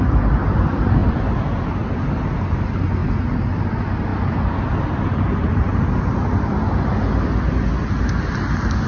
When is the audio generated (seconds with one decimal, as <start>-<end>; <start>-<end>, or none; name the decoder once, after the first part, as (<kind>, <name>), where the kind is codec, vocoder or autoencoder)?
none